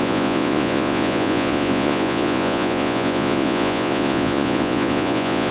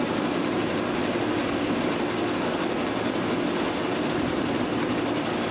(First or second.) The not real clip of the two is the first